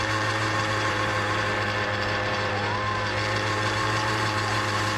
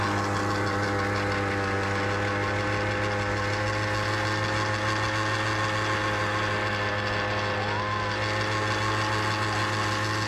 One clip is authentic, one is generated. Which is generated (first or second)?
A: first